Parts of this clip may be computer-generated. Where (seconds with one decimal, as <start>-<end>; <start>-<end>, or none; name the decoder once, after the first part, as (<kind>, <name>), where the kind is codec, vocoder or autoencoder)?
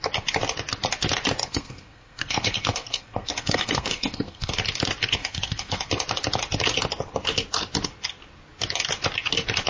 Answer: 1.4-4.5 (codec, SNAC); 5.2-5.9